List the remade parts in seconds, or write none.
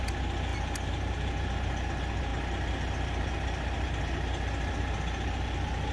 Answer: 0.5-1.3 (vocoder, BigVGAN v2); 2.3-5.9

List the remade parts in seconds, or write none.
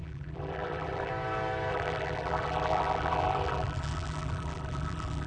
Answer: 0.0-1.1 (vocoder, BigVGAN v2); 1.7-5.3